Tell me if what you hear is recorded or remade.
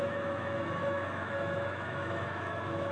remade